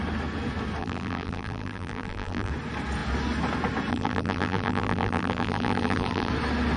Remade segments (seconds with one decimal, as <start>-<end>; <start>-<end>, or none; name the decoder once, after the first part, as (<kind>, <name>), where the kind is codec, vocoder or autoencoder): 0.8-2.5 (vocoder, BigVGAN v2); 3.9-6.3

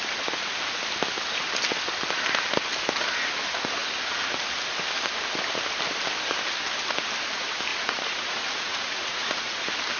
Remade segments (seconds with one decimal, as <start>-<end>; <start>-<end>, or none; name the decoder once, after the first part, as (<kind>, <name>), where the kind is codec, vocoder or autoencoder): 7.7-9.6 (vocoder, Vocos)

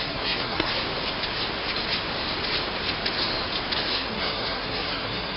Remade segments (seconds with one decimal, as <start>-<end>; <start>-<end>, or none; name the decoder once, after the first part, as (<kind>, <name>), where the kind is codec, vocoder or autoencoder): 0.0-0.7 (codec, SNAC); 3.9-5.4

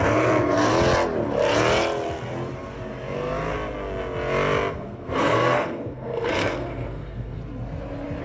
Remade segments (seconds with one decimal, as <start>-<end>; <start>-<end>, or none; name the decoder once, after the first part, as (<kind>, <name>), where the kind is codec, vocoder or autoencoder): 0.0-0.7 (codec, SNAC); 4.7-7.4

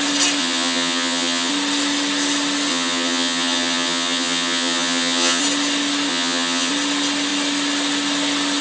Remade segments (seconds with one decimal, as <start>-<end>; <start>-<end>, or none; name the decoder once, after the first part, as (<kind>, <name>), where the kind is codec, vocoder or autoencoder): 0.4-1.5 (vocoder, HiFi-GAN); 2.7-5.4; 6.1-6.7